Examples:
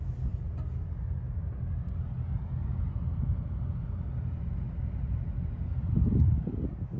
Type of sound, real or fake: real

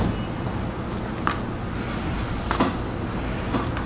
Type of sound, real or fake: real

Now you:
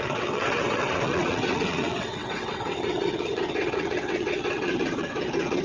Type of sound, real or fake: fake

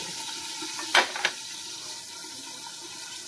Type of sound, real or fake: real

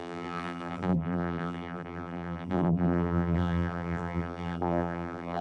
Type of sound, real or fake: fake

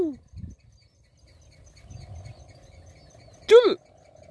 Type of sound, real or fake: real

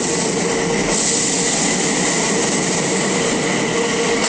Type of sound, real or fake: real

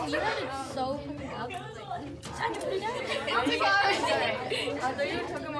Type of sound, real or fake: real